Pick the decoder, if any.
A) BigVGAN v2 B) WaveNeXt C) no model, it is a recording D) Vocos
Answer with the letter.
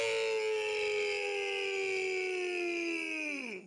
C